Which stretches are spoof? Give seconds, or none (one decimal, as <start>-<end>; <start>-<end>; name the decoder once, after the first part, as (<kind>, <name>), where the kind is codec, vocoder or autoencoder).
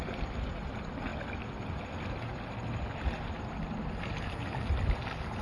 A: none